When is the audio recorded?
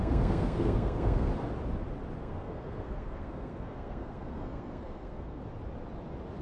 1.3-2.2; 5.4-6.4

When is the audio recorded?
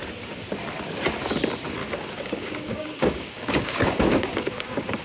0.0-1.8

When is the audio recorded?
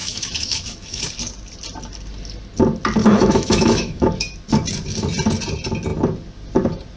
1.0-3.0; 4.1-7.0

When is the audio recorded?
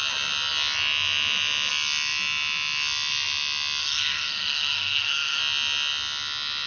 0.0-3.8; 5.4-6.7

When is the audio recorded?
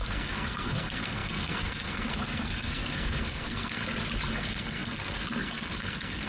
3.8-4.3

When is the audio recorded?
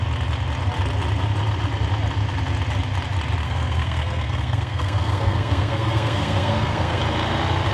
0.0-3.4; 7.0-7.7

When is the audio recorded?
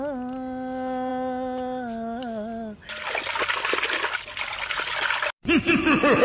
0.0-6.2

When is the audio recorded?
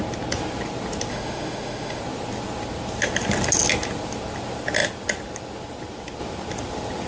0.0-1.1; 2.0-7.1